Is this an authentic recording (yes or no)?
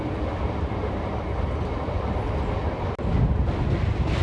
yes